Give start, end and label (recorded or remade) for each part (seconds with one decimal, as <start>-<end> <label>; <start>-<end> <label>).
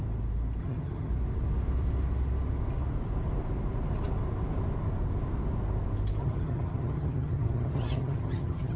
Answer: 0.0-0.6 recorded; 0.6-1.1 remade; 1.1-6.2 recorded; 6.2-8.8 remade